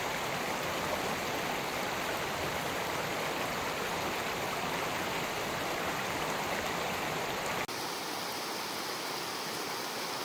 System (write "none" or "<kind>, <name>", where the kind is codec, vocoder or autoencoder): none